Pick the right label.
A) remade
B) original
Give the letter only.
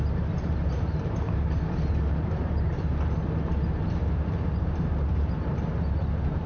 A